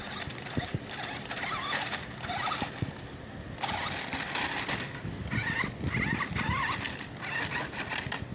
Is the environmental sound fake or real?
real